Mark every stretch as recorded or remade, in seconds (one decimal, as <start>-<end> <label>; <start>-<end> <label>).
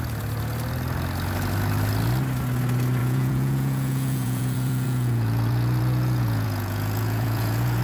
0.0-3.0 recorded; 3.0-7.8 remade